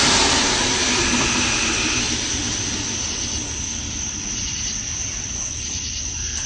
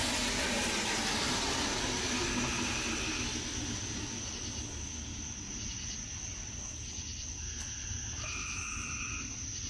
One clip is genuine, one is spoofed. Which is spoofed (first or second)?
first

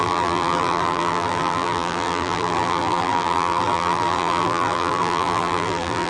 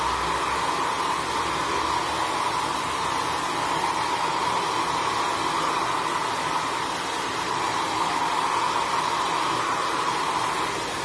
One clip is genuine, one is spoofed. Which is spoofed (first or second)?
first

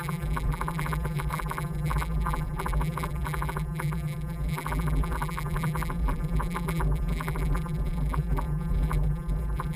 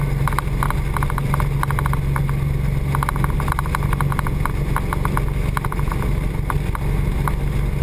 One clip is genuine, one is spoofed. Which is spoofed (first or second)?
first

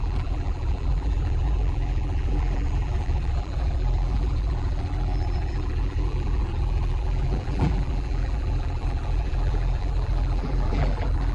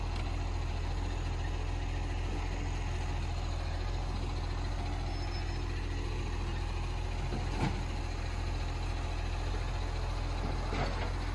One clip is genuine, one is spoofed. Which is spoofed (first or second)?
first